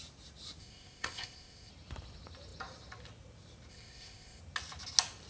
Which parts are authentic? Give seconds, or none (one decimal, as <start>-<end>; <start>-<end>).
0.0-0.6; 1.7-3.7; 4.4-5.3